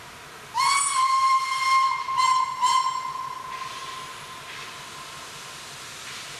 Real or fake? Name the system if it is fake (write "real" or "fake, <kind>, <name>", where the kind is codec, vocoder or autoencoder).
real